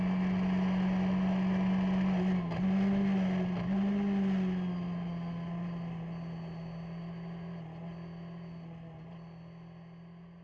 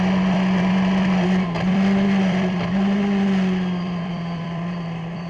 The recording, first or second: first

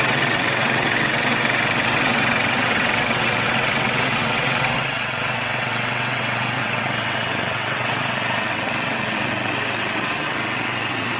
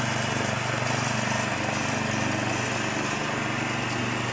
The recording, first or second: second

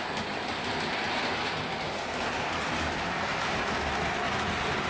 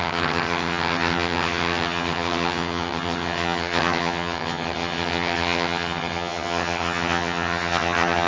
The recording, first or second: first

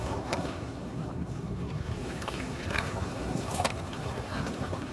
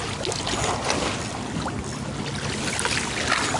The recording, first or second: second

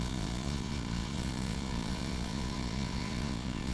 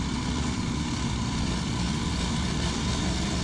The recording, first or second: second